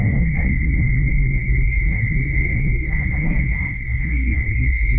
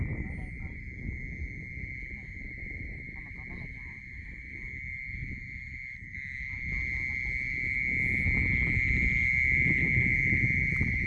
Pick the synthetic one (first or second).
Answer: first